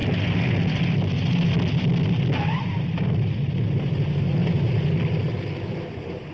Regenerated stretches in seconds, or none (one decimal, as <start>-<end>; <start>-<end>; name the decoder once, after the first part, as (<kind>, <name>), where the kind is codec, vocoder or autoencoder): none